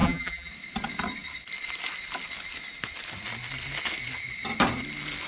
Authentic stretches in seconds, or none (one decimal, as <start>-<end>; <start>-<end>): 0.5-5.3